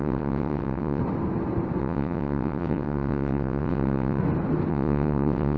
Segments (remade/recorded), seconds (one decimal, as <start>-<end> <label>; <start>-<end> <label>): 0.0-1.0 remade; 1.0-1.8 recorded; 1.8-4.2 remade; 4.2-4.7 recorded; 4.7-5.6 remade